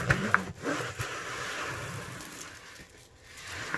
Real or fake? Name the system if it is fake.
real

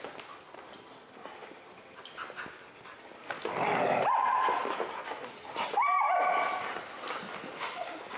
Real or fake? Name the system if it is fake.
real